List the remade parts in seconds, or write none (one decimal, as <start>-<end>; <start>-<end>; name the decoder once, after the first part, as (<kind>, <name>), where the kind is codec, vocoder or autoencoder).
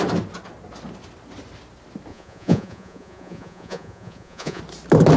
2.1-4.6 (vocoder, Vocos)